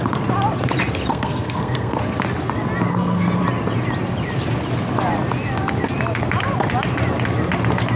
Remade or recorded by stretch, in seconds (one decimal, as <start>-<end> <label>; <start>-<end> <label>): 0.0-1.1 recorded; 1.1-2.0 remade; 2.0-2.9 recorded; 2.9-3.4 remade; 3.4-8.0 recorded